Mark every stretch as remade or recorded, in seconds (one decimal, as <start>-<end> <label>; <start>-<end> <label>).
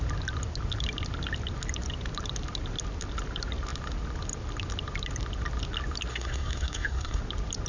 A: 0.0-6.1 recorded; 6.1-7.2 remade; 7.2-7.7 recorded